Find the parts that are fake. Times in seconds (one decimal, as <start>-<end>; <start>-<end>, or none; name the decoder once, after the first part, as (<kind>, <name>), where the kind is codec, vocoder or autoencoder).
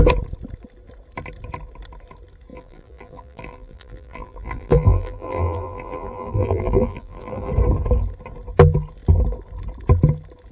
2.5-7.5 (vocoder, BigVGAN v2)